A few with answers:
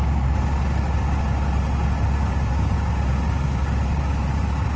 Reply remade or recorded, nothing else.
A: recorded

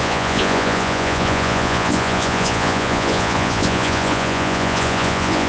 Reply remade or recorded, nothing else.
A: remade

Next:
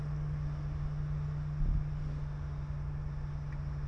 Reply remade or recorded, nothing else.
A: recorded